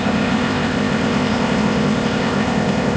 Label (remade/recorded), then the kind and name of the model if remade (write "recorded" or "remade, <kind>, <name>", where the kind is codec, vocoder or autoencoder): remade, codec, ZipCodec